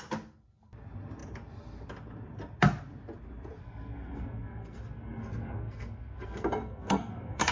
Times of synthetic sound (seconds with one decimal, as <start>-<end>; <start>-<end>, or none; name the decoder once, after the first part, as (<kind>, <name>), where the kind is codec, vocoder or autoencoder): 3.6-7.5 (codec, SNAC)